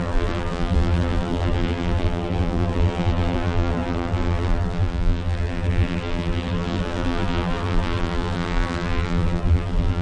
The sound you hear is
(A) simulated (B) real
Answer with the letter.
A